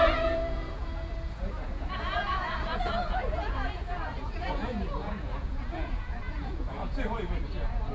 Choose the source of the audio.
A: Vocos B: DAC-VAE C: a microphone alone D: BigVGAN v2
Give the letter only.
A